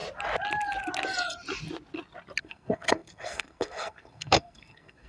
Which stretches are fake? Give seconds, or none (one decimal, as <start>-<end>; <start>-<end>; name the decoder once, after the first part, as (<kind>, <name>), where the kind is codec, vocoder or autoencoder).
2.4-5.1 (codec, SNAC)